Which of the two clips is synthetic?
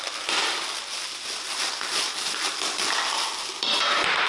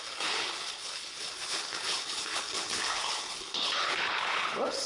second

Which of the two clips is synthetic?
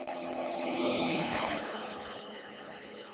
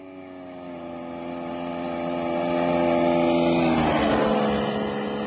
first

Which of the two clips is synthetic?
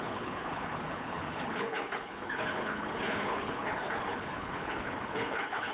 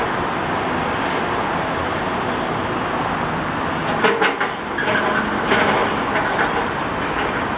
first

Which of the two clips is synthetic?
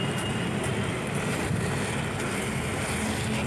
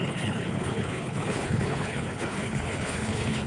second